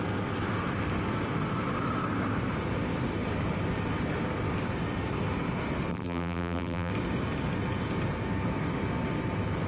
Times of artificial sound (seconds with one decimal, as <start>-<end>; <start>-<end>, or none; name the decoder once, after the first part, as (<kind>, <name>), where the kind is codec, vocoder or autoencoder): 5.9-6.9 (vocoder, BigVGAN v2)